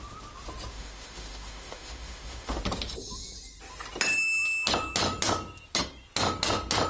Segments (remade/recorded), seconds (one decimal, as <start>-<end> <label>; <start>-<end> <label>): 0.0-0.7 recorded; 0.7-2.6 remade; 2.6-6.9 recorded